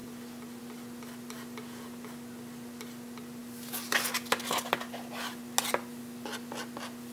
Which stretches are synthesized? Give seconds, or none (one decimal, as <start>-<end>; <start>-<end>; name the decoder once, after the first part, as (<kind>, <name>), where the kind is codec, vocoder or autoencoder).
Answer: none